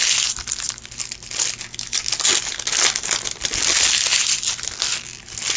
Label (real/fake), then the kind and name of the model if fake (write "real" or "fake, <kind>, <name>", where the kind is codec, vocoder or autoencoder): real